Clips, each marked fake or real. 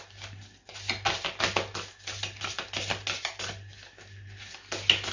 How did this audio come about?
real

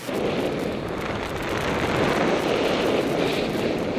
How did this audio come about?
real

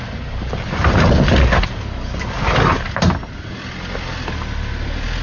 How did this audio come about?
real